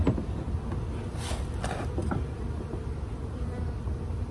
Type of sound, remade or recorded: recorded